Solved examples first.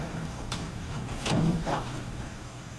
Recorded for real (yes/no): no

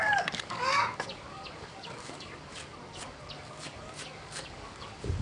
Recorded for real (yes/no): no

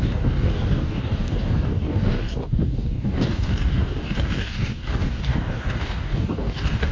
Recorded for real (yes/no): no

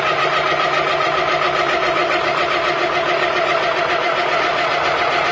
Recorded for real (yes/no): yes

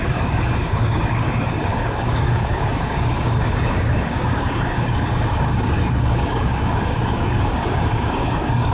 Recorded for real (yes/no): no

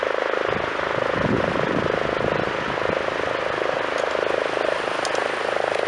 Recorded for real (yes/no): yes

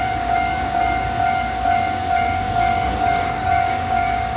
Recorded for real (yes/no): no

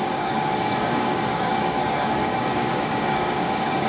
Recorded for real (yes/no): no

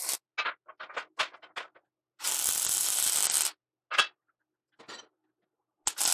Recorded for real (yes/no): yes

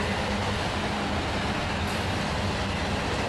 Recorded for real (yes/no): yes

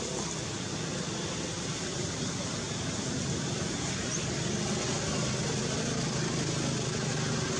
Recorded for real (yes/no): yes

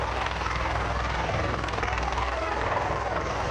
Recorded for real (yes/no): no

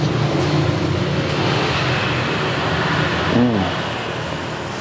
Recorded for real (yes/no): yes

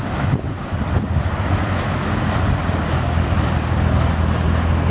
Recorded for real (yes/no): yes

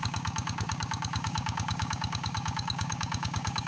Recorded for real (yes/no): no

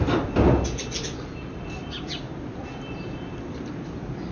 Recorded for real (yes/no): yes